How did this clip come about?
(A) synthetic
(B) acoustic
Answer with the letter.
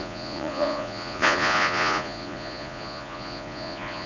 A